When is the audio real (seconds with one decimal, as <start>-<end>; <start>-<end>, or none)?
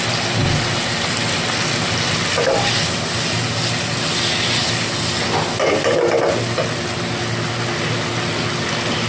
0.0-9.1